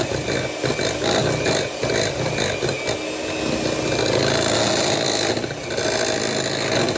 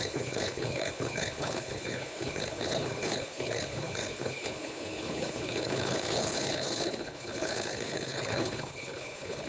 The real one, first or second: first